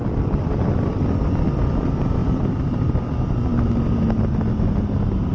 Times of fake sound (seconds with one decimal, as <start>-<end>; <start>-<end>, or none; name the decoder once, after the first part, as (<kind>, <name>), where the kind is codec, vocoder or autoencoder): 0.0-1.5 (vocoder, BigVGAN v2); 2.2-2.8